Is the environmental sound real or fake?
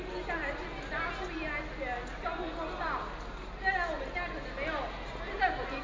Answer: real